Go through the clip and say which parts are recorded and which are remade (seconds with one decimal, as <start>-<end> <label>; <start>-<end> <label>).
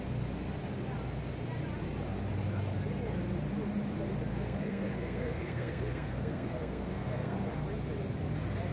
0.0-4.3 recorded; 4.3-7.5 remade; 7.5-8.7 recorded